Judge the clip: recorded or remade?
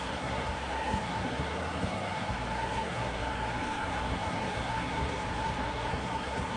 remade